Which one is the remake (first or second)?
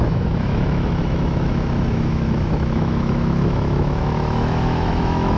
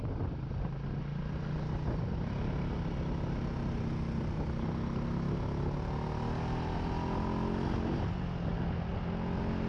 first